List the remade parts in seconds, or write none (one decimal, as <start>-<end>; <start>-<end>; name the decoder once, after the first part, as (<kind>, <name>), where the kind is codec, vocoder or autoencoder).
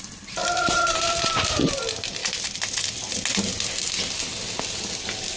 0.4-1.7 (vocoder, BigVGAN v2)